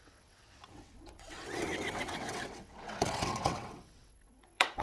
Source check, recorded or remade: remade